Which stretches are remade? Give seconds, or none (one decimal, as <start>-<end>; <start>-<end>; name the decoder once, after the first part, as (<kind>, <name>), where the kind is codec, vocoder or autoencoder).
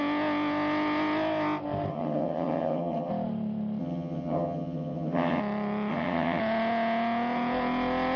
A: 1.9-3.1 (vocoder, HiFi-GAN); 3.8-5.4; 5.9-6.4